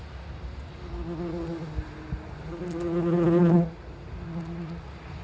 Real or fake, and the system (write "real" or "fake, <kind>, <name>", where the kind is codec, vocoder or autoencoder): real